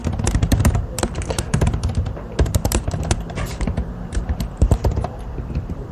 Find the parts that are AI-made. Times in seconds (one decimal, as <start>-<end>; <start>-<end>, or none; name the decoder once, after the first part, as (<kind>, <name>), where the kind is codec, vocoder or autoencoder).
0.0-5.9 (vocoder, BigVGAN v2)